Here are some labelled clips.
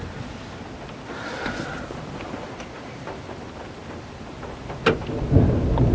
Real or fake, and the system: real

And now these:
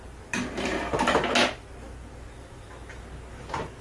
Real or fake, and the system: real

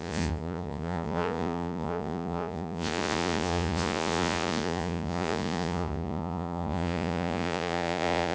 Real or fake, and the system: fake, vocoder, Vocos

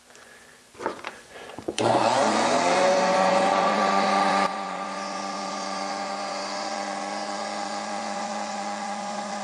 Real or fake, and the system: fake, vocoder, Vocos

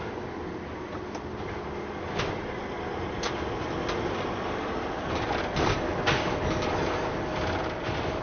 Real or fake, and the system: real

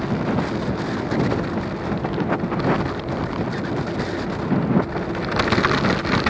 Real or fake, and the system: real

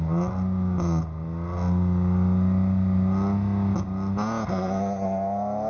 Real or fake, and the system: real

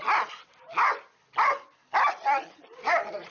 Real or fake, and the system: real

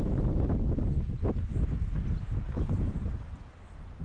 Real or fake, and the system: real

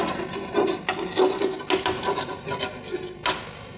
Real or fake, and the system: real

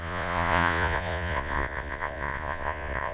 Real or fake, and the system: fake, vocoder, Vocos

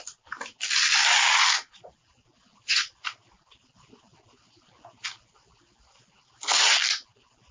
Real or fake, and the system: real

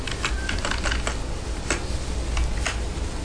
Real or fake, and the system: real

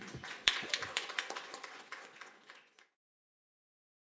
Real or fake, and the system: fake, vocoder, Vocos